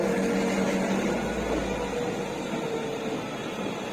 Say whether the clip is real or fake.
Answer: real